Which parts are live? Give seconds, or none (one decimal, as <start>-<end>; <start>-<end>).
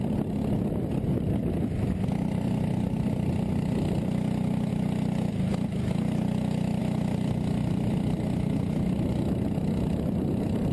0.0-10.7